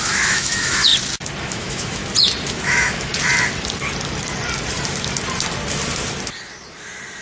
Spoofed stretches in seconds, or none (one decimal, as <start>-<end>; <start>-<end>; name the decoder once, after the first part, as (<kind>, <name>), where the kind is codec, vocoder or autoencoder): 0.0-0.9 (autoencoder, DAC-VAE); 1.4-2.0; 2.5-3.1